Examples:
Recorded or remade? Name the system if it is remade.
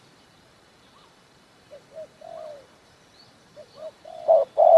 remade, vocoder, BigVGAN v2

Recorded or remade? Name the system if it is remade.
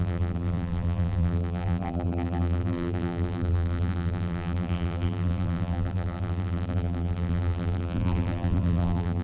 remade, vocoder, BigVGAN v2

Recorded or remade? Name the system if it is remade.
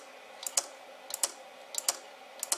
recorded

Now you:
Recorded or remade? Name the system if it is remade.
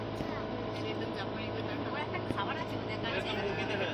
recorded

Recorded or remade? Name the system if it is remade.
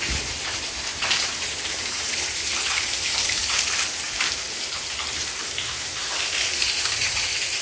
remade, vocoder, BigVGAN v2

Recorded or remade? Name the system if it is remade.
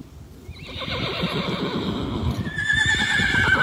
recorded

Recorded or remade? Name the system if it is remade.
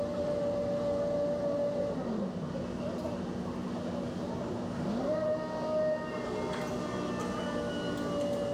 recorded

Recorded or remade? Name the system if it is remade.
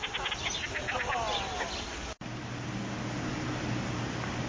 recorded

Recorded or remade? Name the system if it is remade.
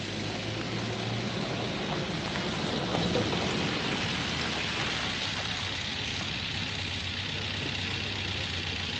recorded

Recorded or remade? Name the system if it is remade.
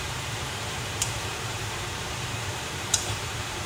remade, vocoder, BigVGAN v2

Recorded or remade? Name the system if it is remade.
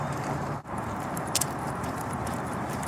remade, vocoder, BigVGAN v2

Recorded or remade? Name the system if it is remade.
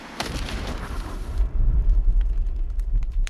remade, vocoder, BigVGAN v2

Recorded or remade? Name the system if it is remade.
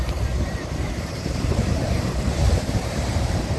remade, vocoder, BigVGAN v2